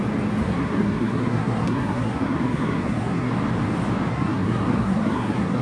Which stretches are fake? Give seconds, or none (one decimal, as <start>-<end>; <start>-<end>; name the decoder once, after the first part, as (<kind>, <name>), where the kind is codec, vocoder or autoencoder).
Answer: 0.4-3.3 (codec, SNAC); 4.1-5.6